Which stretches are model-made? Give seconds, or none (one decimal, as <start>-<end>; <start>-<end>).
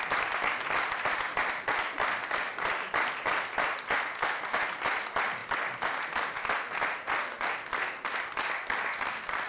none